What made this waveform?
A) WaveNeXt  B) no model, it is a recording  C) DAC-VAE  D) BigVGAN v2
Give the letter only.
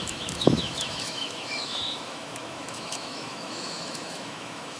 C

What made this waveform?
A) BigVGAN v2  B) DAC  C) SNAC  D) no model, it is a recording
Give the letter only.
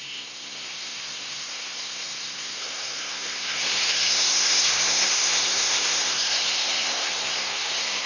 C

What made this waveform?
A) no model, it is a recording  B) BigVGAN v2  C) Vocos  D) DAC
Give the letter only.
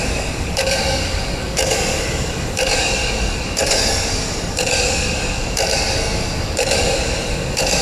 D